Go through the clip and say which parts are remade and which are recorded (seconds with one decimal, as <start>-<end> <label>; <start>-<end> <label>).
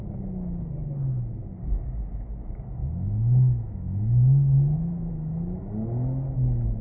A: 0.0-2.8 recorded; 2.8-5.1 remade; 5.1-6.8 recorded